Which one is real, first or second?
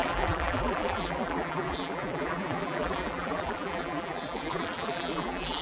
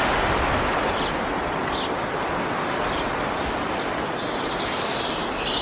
second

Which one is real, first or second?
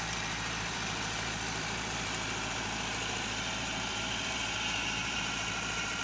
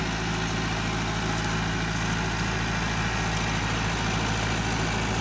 second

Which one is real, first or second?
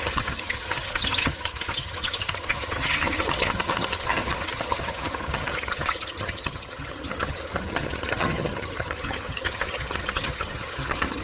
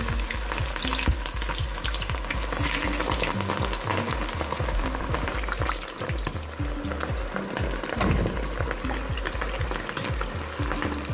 second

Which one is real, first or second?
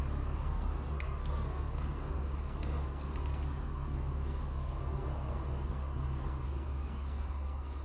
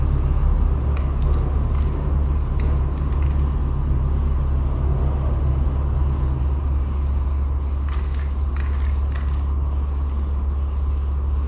second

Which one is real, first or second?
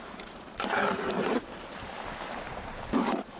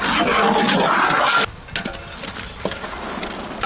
second